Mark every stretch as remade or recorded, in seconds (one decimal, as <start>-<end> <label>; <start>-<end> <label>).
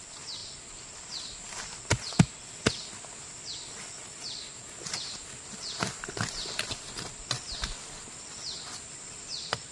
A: 0.0-9.7 recorded